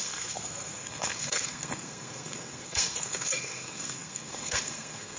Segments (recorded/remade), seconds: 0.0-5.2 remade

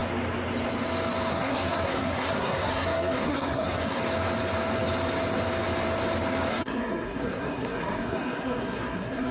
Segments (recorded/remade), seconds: 0.0-1.3 recorded; 1.3-4.0 remade; 4.0-6.5 recorded; 6.5-9.3 remade

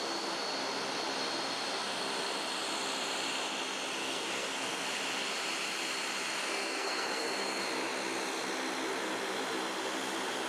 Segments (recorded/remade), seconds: 0.0-4.0 recorded; 4.0-4.9 remade; 4.9-6.4 recorded; 6.4-7.6 remade; 7.6-10.5 recorded

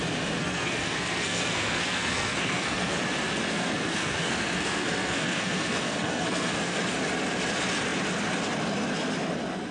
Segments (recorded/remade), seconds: 0.0-0.4 recorded; 0.4-3.0 remade; 3.0-3.4 recorded; 3.4-6.8 remade; 6.8-9.7 recorded

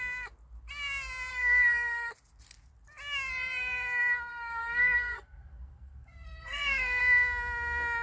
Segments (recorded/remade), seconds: 0.0-1.3 recorded; 1.3-2.1 remade; 2.1-4.3 recorded; 4.3-7.0 remade; 7.0-8.0 recorded

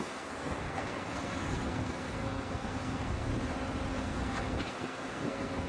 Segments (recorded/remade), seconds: 0.0-3.3 remade; 3.3-3.9 recorded; 3.9-5.7 remade